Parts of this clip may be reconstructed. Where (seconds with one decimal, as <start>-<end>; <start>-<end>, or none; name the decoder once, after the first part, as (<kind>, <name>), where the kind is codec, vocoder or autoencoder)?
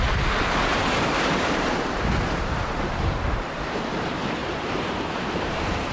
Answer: 0.7-3.8 (vocoder, BigVGAN v2); 4.4-5.9